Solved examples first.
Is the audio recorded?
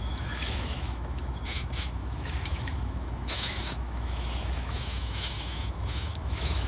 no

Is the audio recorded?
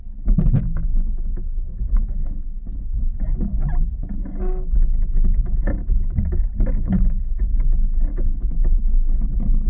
yes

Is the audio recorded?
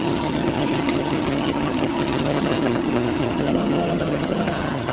no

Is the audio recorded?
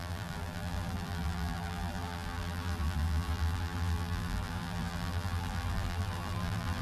no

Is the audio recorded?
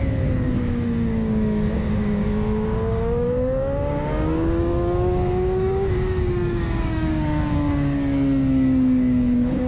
no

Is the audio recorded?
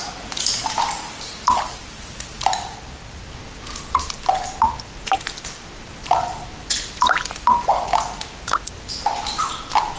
yes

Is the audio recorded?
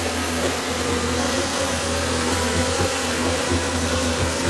no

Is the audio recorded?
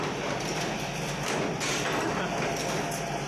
yes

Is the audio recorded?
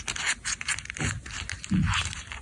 yes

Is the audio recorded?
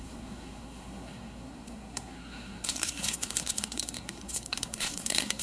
no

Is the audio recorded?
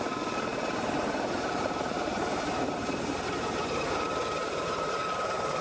no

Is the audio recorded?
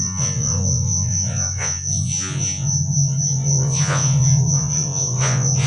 no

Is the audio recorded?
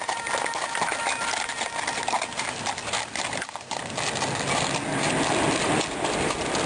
yes